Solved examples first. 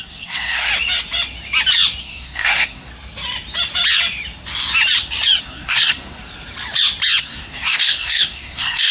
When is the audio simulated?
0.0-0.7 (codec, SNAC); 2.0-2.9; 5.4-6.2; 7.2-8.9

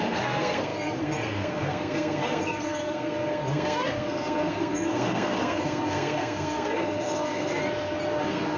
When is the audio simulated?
0.0-7.6 (codec, SNAC); 8.2-8.6

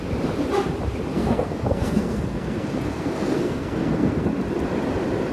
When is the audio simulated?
1.1-4.3 (codec, SNAC)

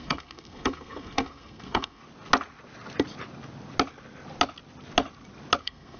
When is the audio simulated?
0.0-2.0 (codec, SNAC); 5.6-6.0

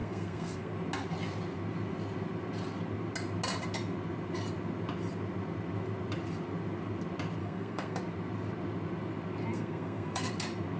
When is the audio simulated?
0.0-0.7 (codec, SNAC); 7.4-8.0; 9.5-10.3